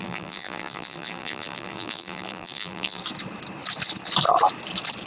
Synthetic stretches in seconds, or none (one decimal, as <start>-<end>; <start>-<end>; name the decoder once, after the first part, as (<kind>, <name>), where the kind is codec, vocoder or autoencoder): 0.0-3.0 (vocoder, BigVGAN v2)